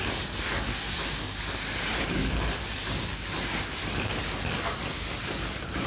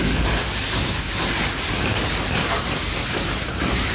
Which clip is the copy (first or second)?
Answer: second